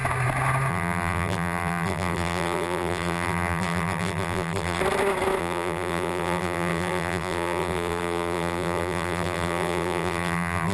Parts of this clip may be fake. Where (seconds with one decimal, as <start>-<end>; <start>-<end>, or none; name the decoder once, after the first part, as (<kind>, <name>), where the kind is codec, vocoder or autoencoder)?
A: 0.7-4.8 (vocoder, BigVGAN v2); 5.4-10.7